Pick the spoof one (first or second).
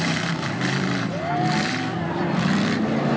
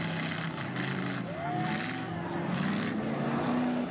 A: first